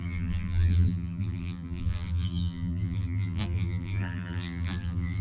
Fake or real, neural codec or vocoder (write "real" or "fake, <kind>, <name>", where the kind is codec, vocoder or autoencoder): fake, vocoder, BigVGAN v2